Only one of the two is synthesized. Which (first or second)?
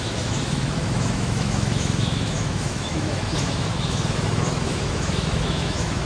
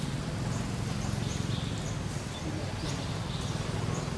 first